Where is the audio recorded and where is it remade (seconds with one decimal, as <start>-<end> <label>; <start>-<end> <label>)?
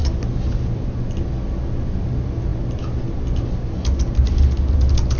0.0-5.2 recorded